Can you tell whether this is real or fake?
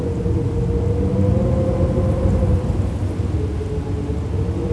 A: real